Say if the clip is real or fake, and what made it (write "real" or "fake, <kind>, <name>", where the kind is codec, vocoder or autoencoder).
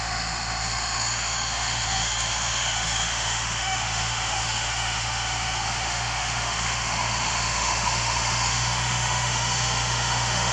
fake, autoencoder, DAC-VAE